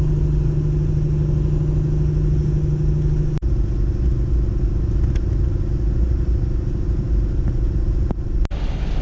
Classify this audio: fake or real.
real